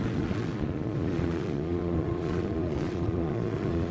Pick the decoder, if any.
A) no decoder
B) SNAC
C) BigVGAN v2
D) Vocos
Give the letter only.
D